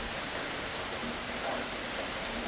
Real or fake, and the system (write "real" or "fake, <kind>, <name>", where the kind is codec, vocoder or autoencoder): real